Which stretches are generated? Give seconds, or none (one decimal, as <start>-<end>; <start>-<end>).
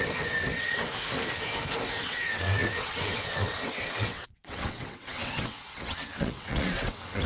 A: 0.0-0.9; 2.0-7.3